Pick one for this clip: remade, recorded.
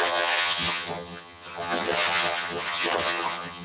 remade